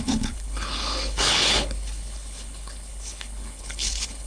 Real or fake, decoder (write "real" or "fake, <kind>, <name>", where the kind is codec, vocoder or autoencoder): fake, codec, HILCodec